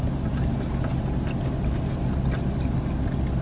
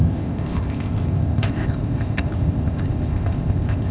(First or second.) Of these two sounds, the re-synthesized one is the second